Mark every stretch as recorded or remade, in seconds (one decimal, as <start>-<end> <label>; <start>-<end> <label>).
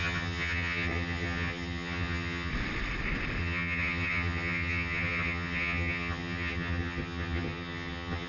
0.0-2.5 remade; 2.5-3.4 recorded; 3.4-8.3 remade